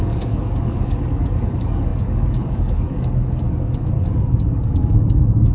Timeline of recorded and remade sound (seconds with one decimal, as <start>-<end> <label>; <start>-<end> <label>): 0.0-5.5 remade

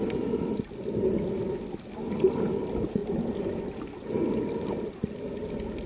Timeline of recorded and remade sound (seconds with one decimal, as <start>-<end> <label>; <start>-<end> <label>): 0.0-5.9 recorded

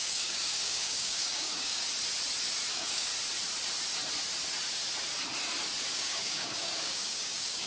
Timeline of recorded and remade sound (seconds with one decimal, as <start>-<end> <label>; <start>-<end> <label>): 0.0-1.8 remade; 1.8-2.7 recorded; 2.7-3.1 remade; 3.1-5.9 recorded; 5.9-7.7 remade

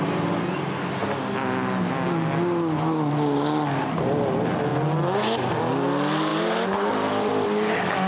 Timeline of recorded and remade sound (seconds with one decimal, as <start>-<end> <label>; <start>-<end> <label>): 0.0-8.1 recorded

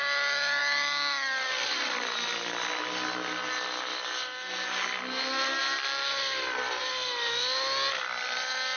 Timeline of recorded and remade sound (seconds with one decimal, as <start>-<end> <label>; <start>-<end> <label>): 0.0-8.8 recorded

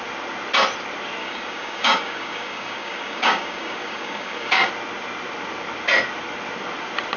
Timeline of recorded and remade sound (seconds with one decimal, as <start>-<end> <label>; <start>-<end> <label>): 0.0-1.2 recorded; 1.2-4.7 remade; 4.7-7.2 recorded